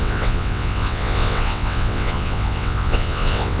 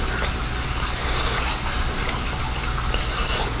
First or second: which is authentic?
second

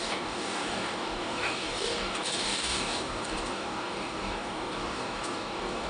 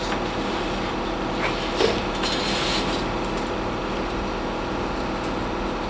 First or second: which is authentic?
second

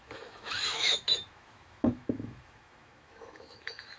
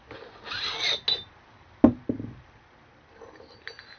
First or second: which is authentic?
second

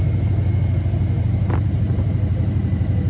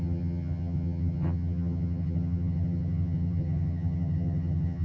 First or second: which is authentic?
first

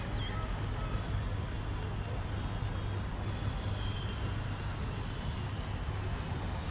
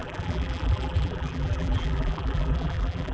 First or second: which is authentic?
first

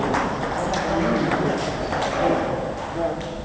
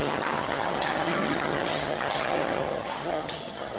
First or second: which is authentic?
first